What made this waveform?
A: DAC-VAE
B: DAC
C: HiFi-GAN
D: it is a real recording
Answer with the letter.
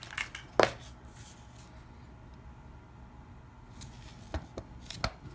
D